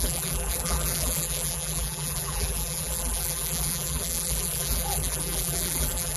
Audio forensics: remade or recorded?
remade